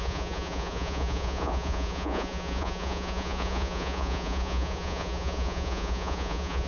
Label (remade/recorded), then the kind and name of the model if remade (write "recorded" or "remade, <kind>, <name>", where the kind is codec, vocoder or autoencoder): remade, vocoder, Vocos